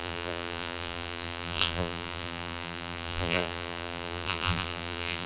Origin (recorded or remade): remade